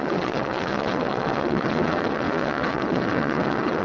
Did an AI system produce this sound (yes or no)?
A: yes